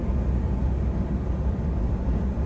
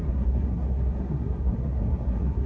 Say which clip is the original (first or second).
first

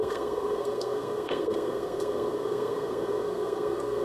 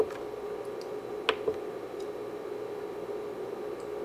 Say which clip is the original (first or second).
second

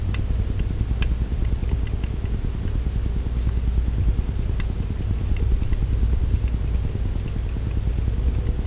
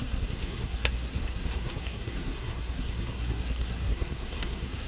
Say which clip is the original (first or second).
first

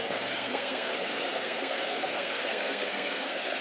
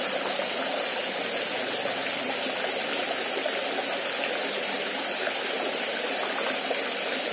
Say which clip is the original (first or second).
second